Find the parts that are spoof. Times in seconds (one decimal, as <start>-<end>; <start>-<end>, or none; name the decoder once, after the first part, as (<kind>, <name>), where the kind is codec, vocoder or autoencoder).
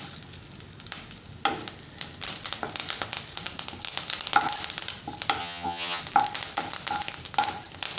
5.4-6.0 (vocoder, HiFi-GAN)